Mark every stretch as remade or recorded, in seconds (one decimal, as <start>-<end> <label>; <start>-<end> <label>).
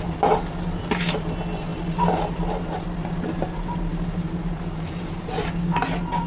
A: 0.0-6.3 recorded